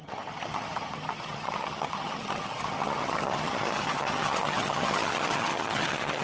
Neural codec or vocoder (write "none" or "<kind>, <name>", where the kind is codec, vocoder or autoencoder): vocoder, HiFi-GAN